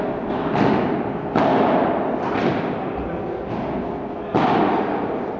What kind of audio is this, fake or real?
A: real